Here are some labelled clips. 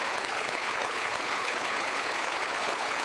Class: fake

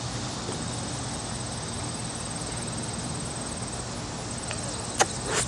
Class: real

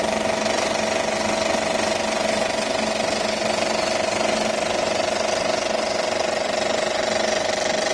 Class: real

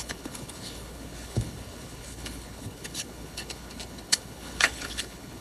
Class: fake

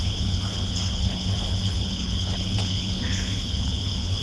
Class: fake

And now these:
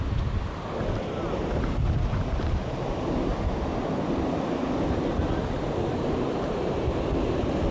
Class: real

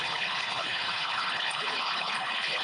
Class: fake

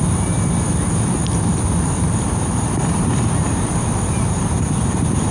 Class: real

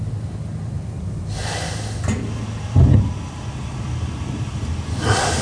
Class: real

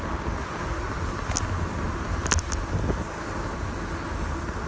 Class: real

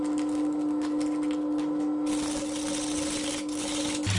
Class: real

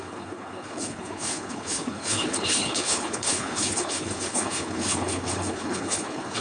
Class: fake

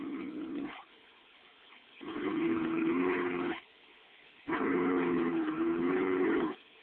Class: fake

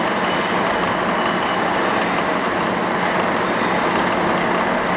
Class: real